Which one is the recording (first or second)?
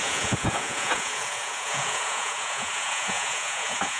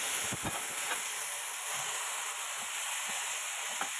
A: second